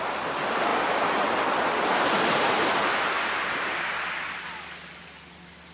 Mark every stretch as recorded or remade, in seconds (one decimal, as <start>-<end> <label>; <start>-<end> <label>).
0.0-5.7 recorded